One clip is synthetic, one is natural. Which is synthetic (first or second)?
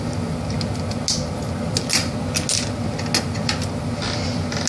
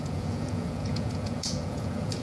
second